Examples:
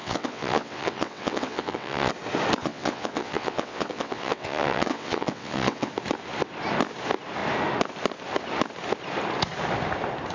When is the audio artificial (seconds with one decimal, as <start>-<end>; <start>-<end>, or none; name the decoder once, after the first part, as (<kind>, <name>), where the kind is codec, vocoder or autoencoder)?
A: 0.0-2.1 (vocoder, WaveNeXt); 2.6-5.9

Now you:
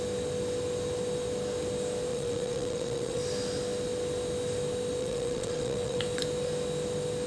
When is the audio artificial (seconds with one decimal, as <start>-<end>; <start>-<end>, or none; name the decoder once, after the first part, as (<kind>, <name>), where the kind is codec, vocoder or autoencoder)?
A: 2.1-3.2 (vocoder, WaveNeXt); 5.0-6.0

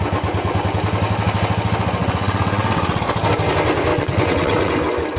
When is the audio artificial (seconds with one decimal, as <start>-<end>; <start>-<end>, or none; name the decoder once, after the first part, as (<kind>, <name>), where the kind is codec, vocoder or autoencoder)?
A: 2.0-3.0 (vocoder, WaveNeXt); 3.9-4.7

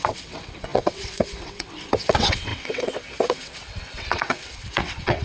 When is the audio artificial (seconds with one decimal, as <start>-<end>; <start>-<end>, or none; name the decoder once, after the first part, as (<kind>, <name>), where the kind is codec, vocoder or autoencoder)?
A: 0.0-5.2 (vocoder, WaveNeXt)